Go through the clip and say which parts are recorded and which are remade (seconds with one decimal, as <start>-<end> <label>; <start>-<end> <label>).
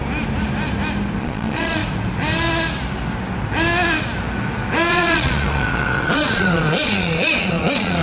0.0-1.2 recorded; 1.2-1.8 remade; 1.8-4.9 recorded; 4.9-8.0 remade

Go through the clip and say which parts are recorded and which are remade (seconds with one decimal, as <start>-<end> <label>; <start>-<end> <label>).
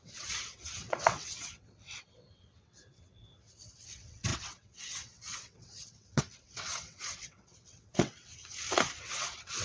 0.0-8.3 remade; 8.3-9.0 recorded; 9.0-9.6 remade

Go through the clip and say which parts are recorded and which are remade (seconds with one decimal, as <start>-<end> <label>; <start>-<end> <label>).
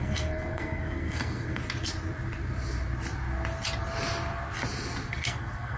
0.0-1.6 remade; 1.6-5.1 recorded; 5.1-5.8 remade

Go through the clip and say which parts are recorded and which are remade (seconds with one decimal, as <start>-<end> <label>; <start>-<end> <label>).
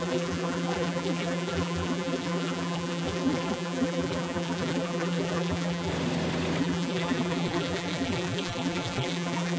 0.0-5.9 remade; 5.9-6.6 recorded; 6.6-9.6 remade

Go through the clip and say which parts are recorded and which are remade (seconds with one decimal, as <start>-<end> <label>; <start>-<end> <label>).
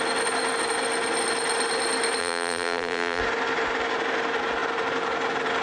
0.0-2.2 recorded; 2.2-3.2 remade; 3.2-5.6 recorded